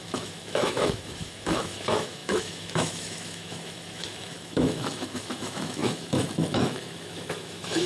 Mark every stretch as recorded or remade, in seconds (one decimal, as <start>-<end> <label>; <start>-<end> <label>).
0.0-7.9 remade